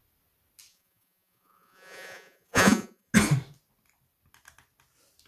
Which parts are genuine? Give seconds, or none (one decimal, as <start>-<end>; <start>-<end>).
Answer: 0.0-0.7; 3.1-5.3